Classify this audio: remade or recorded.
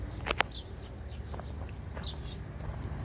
recorded